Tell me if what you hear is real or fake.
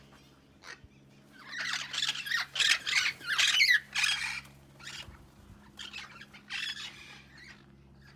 real